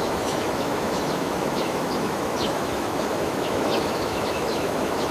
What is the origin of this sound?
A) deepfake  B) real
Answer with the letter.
A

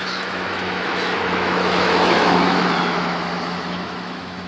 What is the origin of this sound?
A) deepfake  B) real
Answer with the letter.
A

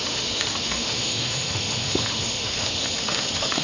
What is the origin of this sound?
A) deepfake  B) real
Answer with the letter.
A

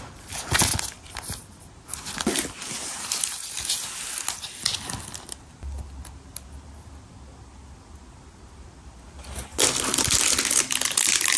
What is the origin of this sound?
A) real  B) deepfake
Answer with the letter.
A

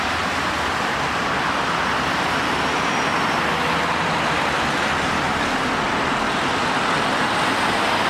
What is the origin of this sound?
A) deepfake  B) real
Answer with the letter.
B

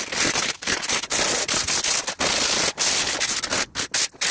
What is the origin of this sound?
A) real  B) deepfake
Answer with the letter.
A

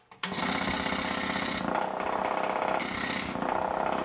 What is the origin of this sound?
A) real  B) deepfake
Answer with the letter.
A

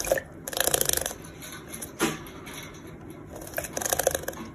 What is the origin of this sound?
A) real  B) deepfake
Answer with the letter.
A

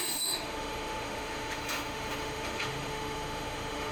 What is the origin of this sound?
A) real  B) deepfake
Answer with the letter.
B